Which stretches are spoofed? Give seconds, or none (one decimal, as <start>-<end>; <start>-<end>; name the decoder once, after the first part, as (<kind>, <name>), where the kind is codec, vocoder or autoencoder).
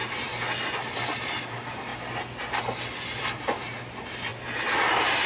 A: 0.7-1.9 (vocoder, BigVGAN v2); 3.2-4.3